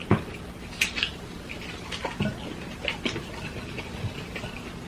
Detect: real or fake fake